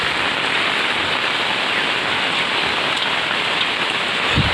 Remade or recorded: recorded